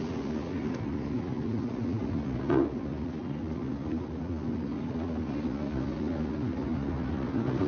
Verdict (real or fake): fake